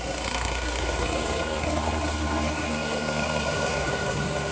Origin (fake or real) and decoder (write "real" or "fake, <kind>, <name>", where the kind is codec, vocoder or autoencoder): fake, codec, SNAC